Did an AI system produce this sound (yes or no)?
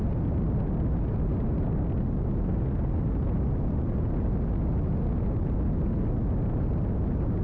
no